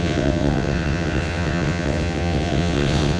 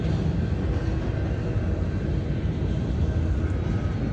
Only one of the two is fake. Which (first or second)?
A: first